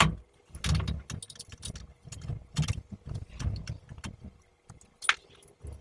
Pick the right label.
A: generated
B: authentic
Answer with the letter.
B